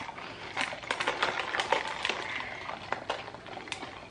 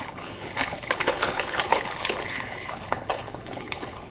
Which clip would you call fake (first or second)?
second